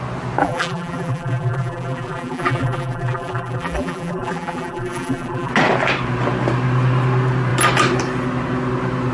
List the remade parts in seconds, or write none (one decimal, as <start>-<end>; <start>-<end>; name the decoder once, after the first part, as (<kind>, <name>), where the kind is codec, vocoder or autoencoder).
0.4-5.5 (vocoder, BigVGAN v2)